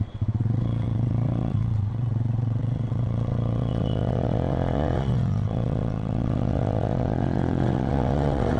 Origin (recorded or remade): remade